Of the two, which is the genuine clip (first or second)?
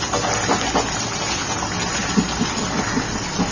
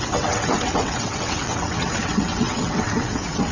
first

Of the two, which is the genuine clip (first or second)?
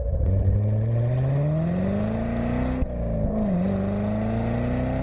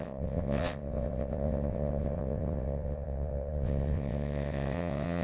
first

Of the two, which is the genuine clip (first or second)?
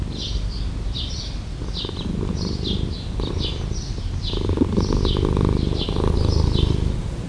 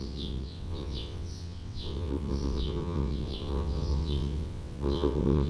first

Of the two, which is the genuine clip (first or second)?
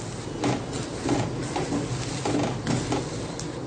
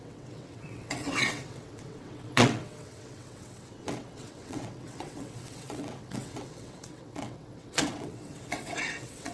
first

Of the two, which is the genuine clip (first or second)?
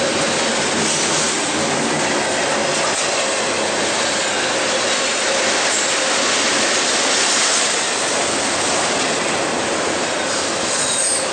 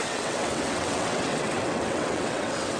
first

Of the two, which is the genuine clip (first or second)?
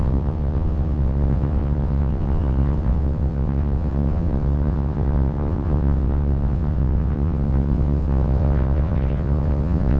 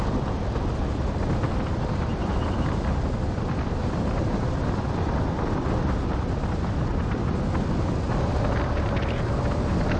second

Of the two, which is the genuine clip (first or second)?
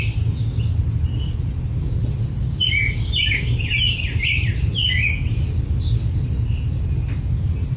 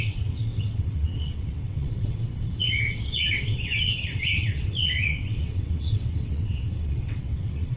first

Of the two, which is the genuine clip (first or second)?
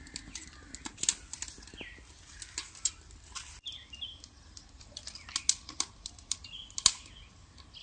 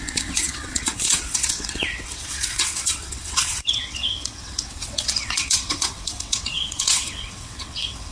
first